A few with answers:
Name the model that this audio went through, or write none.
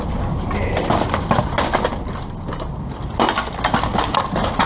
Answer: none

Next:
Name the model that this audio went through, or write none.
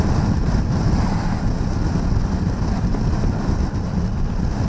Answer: none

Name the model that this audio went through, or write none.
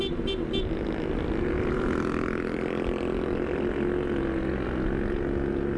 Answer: none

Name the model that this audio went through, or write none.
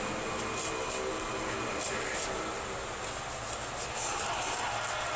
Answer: none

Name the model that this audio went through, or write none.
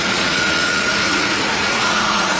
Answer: vocoder, Vocos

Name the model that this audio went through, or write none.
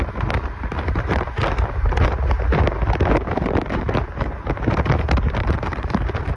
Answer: vocoder, BigVGAN v2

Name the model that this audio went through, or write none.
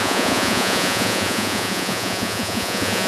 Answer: vocoder, Vocos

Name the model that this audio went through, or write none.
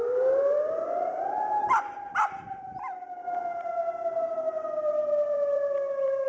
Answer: vocoder, BigVGAN v2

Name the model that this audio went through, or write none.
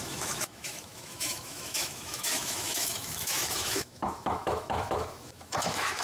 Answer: autoencoder, DAC-VAE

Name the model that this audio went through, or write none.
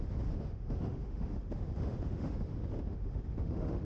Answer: autoencoder, DAC-VAE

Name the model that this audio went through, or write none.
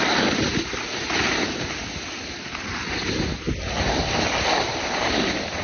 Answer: none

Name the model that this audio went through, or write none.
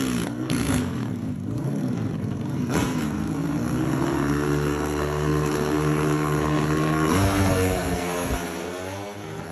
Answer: codec, SNAC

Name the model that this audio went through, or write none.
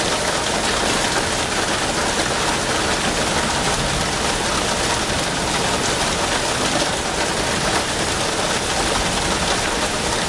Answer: none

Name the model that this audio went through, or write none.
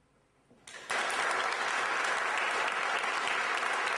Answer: none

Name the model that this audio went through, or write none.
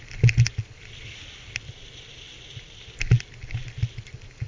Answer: none